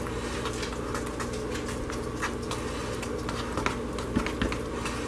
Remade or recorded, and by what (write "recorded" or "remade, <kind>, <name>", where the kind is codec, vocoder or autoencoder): recorded